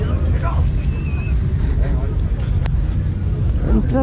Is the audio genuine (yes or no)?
yes